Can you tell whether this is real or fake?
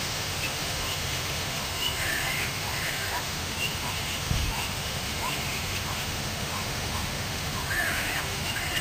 fake